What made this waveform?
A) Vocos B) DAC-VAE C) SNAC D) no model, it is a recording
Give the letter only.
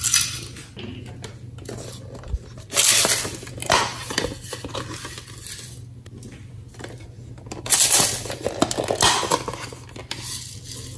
D